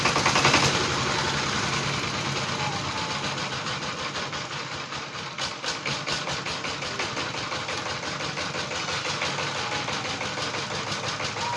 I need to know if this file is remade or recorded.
recorded